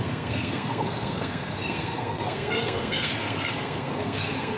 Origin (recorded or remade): remade